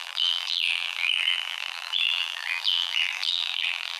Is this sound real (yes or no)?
no